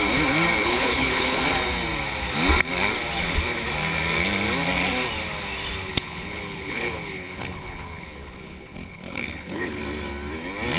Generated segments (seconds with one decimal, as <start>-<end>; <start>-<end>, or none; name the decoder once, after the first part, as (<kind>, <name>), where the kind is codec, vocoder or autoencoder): 0.6-1.4 (codec, HILCodec); 5.9-9.8